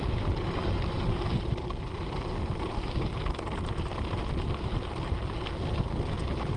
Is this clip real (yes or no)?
yes